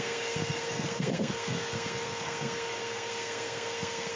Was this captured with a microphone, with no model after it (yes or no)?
no